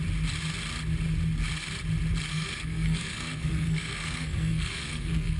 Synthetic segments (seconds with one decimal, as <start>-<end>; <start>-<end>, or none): 2.3-5.4